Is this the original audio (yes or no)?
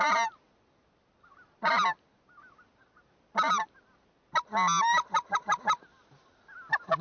yes